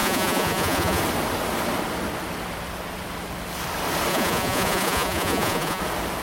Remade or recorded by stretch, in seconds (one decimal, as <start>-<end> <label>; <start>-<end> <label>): 0.0-1.0 remade; 1.0-4.1 recorded; 4.1-5.8 remade; 5.8-6.2 recorded